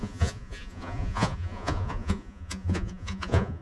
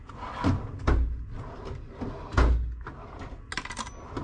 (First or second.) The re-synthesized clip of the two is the first